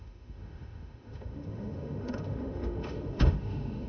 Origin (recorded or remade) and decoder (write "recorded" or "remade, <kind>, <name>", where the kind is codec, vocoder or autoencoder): remade, autoencoder, DAC-VAE